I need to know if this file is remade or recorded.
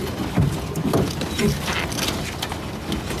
recorded